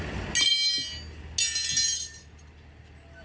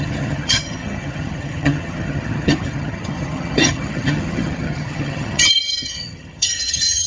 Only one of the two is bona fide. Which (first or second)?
first